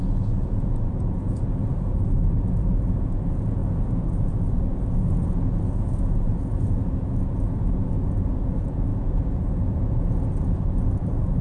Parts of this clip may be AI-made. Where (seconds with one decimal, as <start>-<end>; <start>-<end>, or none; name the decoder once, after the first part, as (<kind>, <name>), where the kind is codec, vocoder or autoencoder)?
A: 0.0-11.4 (vocoder, Vocos)